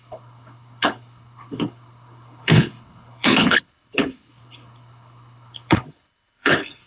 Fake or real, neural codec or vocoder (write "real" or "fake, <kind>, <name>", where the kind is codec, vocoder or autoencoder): fake, codec, HILCodec